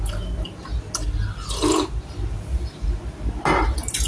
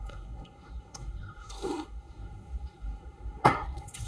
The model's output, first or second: second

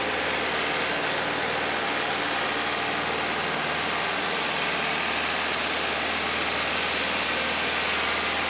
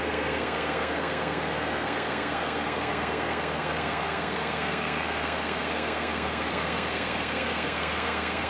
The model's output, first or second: second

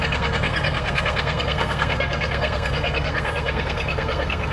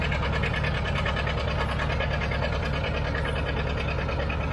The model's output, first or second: first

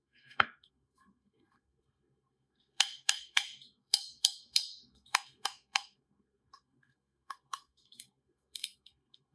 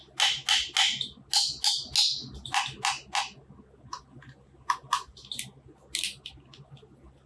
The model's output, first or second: first